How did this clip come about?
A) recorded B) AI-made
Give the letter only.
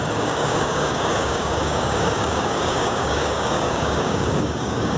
B